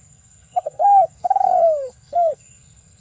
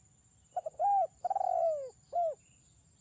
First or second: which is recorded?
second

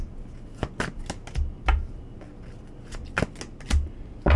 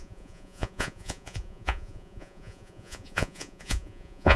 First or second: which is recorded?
first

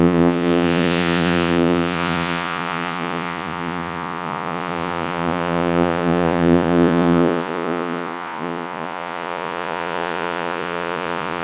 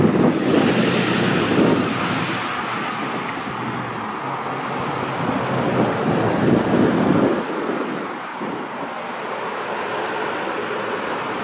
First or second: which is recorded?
second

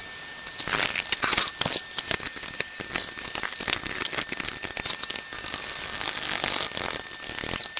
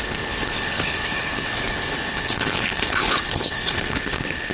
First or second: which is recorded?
first